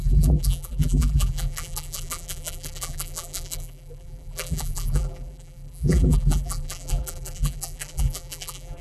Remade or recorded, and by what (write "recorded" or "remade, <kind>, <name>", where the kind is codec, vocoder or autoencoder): remade, vocoder, BigVGAN v2